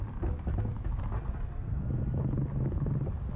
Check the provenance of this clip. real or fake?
real